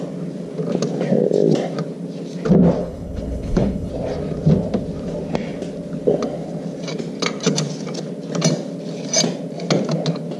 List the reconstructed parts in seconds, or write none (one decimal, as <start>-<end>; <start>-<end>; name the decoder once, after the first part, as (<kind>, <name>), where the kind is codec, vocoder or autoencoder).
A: 2.8-3.9 (codec, HILCodec)